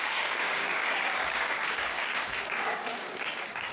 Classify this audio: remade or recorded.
remade